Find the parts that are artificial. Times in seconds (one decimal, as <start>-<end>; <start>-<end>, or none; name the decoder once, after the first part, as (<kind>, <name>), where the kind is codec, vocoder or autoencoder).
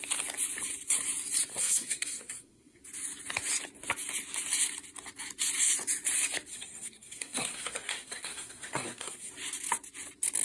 1.5-2.8 (codec, SNAC); 6.5-9.3